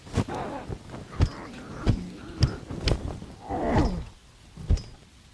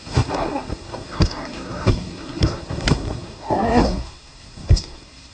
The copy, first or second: second